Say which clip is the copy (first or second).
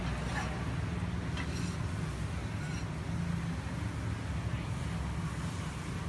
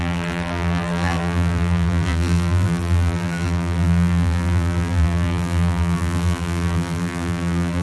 second